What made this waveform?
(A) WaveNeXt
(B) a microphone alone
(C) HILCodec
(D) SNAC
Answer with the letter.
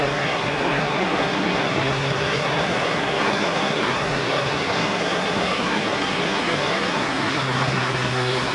D